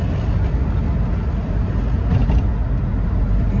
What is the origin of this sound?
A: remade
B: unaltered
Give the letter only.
B